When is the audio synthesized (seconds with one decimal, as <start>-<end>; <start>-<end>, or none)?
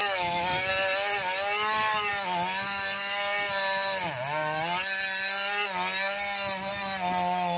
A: 0.0-0.7